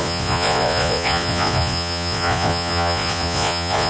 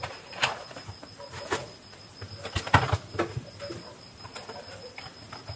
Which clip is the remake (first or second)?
first